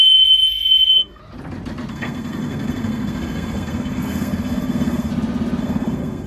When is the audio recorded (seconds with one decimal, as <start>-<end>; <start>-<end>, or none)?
1.2-1.9; 5.1-5.6